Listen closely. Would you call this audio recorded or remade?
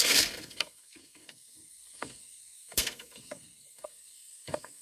remade